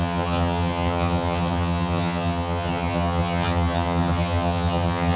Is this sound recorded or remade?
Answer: remade